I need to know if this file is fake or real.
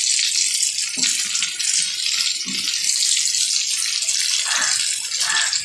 real